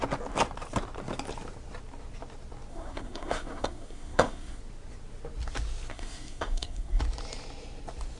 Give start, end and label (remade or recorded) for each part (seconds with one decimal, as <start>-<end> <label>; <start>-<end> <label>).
0.0-2.7 recorded; 2.7-4.6 remade; 4.6-5.9 recorded; 5.9-7.0 remade; 7.0-8.2 recorded